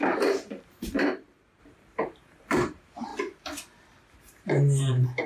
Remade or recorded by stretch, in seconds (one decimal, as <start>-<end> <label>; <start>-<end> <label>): 0.0-1.1 remade; 1.1-1.6 recorded; 1.6-3.1 remade; 3.1-4.2 recorded; 4.2-5.3 remade